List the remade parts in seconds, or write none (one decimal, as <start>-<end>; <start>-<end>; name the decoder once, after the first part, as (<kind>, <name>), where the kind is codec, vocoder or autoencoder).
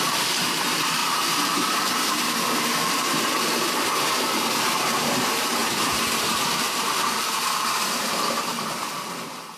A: 0.0-9.6 (vocoder, BigVGAN v2)